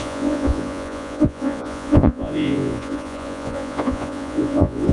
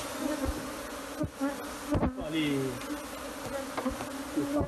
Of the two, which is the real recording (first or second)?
second